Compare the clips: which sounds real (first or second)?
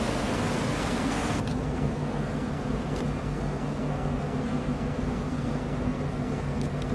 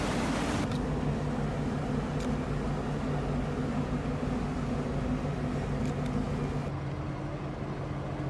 second